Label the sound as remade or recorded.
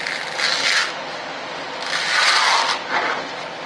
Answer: recorded